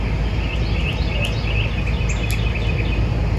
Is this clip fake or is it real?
real